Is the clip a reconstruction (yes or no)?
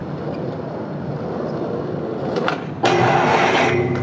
no